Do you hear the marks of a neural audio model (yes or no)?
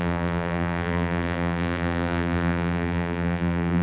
yes